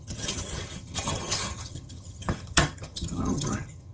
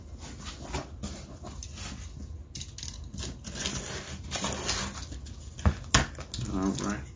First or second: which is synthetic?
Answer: first